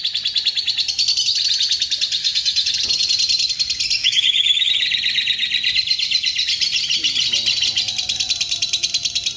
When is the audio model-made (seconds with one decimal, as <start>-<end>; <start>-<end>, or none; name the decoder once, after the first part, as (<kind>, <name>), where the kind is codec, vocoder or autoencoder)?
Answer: 2.2-2.7 (autoencoder, DAC-VAE); 4.0-4.7